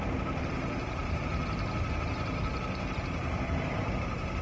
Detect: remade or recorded remade